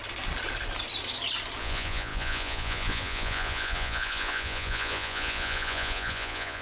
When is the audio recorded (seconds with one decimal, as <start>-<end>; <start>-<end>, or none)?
0.0-1.6